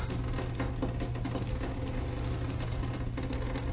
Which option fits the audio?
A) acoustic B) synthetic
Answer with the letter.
A